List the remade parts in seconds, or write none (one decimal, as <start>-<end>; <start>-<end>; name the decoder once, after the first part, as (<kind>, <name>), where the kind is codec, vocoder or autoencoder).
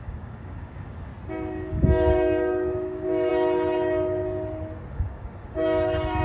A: 0.0-1.1 (codec, DAC); 1.7-3.3; 4.9-6.2